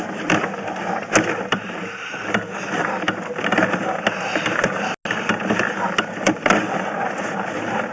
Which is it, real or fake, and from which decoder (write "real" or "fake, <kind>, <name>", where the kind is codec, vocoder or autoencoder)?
real